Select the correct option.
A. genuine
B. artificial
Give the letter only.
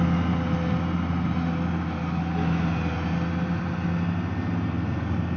A